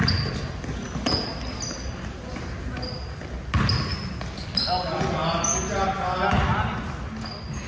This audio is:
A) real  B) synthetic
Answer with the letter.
A